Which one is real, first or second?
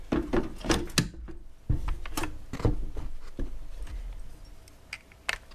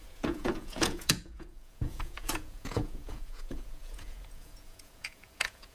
first